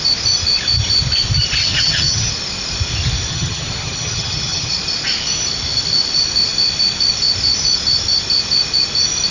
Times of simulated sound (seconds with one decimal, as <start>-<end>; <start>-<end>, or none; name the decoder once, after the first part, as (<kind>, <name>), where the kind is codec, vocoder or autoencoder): 1.6-2.3 (vocoder, HiFi-GAN); 3.3-4.7

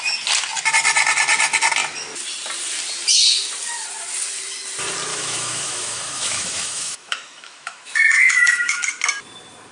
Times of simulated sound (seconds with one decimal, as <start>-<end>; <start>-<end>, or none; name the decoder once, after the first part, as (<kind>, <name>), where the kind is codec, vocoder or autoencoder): 5.1-8.8 (autoencoder, DAC-VAE)